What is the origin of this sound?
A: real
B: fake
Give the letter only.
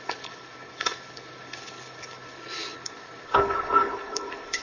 B